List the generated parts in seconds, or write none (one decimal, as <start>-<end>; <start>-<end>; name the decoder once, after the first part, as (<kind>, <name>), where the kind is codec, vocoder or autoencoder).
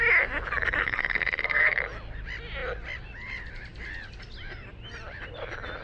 0.8-1.8 (codec, SNAC)